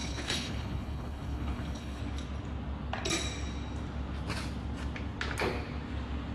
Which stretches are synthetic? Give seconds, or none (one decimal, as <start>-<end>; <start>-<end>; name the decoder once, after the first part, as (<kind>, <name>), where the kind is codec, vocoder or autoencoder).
0.0-2.0 (codec, HILCodec)